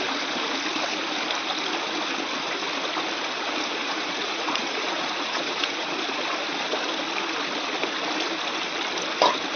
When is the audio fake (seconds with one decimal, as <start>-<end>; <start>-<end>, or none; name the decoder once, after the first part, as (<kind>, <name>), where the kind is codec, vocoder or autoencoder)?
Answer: 3.8-6.0 (vocoder, Vocos)